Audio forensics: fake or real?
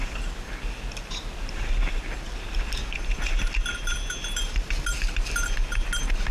real